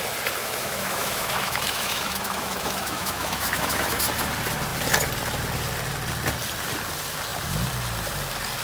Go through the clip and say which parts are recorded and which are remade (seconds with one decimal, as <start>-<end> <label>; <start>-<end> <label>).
0.0-0.4 recorded; 0.4-4.0 remade; 4.0-8.6 recorded